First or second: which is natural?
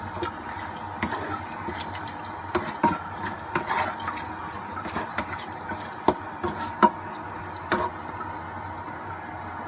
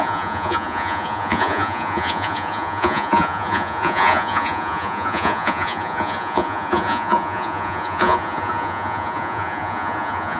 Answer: first